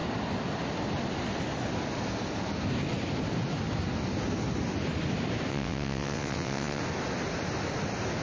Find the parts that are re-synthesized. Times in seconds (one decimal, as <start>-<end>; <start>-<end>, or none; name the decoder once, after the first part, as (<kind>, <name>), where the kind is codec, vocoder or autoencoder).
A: 5.5-6.8 (vocoder, WaveNeXt)